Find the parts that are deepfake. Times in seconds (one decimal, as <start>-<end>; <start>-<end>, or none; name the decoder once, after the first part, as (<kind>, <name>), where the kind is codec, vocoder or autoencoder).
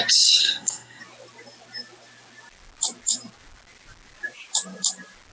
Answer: 0.4-1.0 (codec, SNAC)